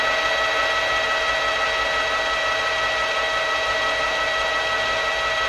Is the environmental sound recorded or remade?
recorded